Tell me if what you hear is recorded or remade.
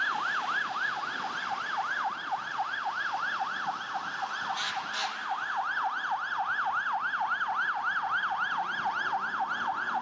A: recorded